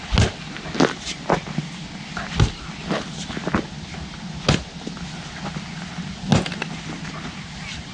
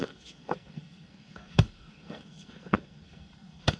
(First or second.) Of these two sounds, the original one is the first